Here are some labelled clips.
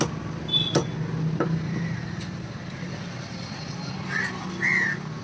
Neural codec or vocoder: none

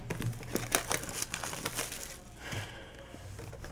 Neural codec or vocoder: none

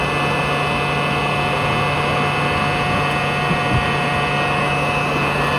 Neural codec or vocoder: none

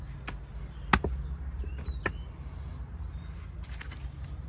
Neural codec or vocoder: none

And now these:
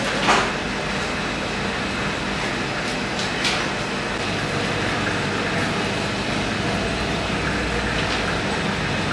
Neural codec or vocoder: none